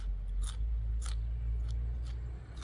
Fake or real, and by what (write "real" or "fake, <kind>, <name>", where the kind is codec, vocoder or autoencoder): real